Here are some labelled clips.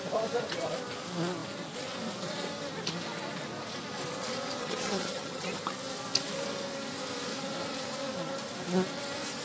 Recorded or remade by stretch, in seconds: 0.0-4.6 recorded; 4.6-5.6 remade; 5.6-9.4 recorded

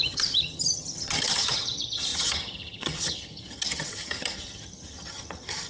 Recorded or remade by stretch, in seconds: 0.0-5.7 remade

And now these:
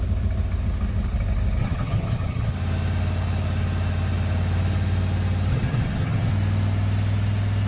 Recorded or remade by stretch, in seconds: 0.0-1.6 recorded; 1.6-2.5 remade; 2.5-5.5 recorded; 5.5-6.3 remade; 6.3-7.7 recorded

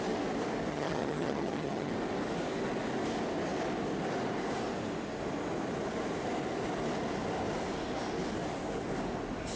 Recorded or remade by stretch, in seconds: 0.0-0.7 recorded; 0.7-1.9 remade; 1.9-9.6 recorded

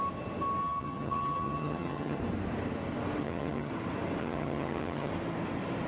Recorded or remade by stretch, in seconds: 0.0-0.6 recorded; 0.6-2.2 remade; 2.2-3.2 recorded; 3.2-3.7 remade; 3.7-4.2 recorded; 4.2-5.1 remade; 5.1-5.9 recorded

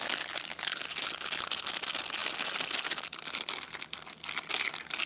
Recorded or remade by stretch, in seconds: 0.0-5.1 recorded

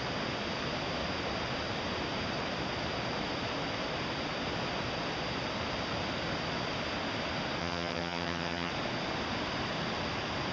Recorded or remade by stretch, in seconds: 0.0-7.6 recorded; 7.6-8.7 remade; 8.7-10.5 recorded

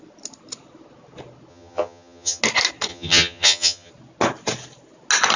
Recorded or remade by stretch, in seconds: 0.0-1.5 recorded; 1.5-2.4 remade; 2.4-2.9 recorded; 2.9-3.9 remade; 3.9-5.4 recorded